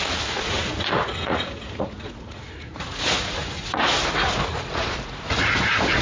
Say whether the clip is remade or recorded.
remade